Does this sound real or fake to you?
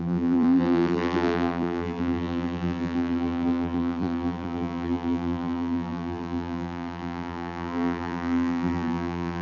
fake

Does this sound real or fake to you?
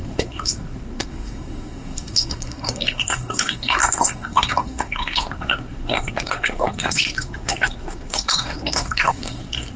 fake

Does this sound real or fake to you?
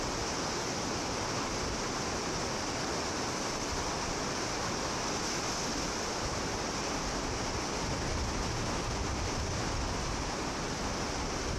real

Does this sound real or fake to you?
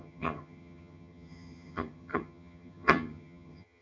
fake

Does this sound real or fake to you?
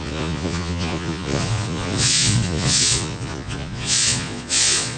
fake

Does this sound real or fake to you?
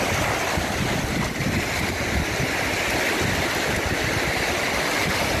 real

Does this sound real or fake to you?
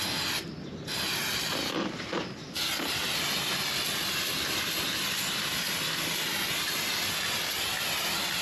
real